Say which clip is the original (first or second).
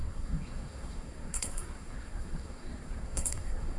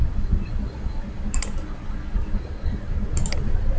second